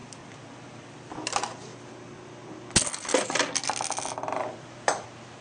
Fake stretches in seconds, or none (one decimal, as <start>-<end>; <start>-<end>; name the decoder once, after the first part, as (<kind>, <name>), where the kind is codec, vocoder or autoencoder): 0.0-1.7 (vocoder, BigVGAN v2); 4.4-5.4